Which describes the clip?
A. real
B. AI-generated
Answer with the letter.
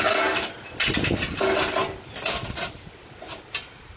A